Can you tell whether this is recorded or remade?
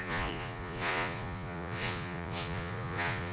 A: remade